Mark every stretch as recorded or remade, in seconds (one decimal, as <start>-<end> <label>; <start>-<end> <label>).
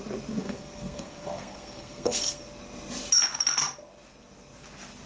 0.0-0.4 recorded; 0.4-2.4 remade; 2.4-5.1 recorded